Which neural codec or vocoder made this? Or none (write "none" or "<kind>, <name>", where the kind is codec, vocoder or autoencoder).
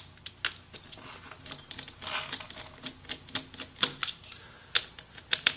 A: none